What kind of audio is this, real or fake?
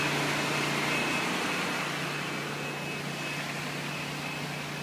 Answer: real